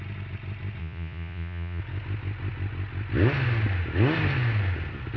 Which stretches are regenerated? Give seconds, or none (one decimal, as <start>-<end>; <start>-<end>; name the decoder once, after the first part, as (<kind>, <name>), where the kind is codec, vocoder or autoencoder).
0.8-1.8 (vocoder, Vocos)